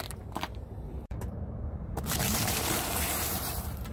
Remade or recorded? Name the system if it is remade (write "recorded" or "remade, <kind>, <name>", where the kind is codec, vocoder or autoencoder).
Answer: remade, vocoder, BigVGAN v2